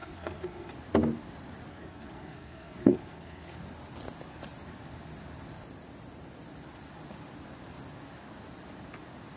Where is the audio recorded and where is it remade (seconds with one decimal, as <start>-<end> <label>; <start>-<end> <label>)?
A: 0.0-0.7 remade; 0.7-1.7 recorded; 1.7-3.6 remade; 3.6-9.4 recorded